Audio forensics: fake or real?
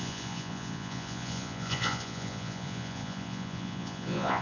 fake